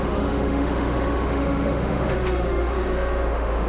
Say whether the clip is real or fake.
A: fake